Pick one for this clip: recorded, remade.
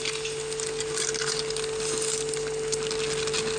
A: recorded